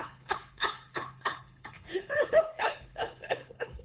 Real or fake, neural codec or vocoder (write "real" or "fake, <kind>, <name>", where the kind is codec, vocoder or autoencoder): fake, codec, HILCodec